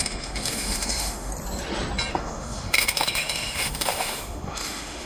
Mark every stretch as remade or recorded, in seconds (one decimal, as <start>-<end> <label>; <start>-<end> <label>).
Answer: 0.0-1.3 remade; 1.3-2.1 recorded; 2.1-5.1 remade